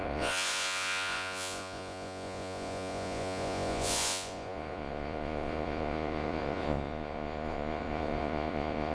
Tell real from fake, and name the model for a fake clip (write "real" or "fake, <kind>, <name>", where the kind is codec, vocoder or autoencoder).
fake, vocoder, Vocos